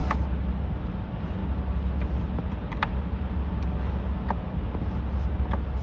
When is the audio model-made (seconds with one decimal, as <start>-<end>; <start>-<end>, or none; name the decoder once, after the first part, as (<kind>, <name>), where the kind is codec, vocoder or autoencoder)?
none